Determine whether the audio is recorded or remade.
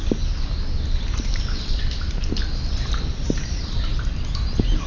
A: recorded